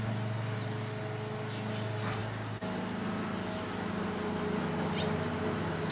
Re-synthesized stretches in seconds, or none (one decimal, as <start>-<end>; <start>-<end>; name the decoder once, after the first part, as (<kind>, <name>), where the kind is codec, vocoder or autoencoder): none